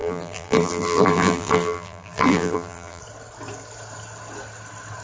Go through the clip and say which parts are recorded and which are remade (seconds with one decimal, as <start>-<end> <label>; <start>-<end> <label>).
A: 0.0-3.0 remade; 3.0-5.0 recorded